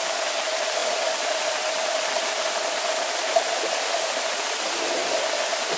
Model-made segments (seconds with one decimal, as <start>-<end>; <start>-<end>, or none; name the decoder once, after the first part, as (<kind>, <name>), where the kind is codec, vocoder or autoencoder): none

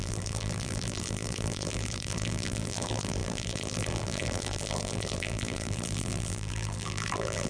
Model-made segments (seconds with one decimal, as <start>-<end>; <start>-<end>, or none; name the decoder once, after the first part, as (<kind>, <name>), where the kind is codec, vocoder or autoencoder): 0.0-7.5 (vocoder, BigVGAN v2)